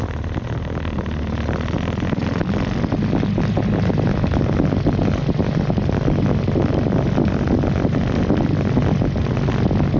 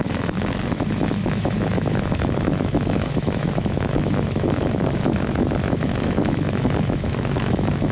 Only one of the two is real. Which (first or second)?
first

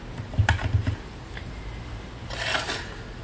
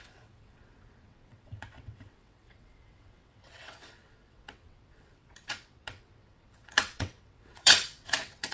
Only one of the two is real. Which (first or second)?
first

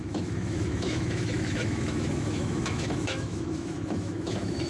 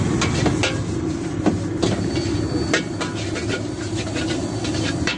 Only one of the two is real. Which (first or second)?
second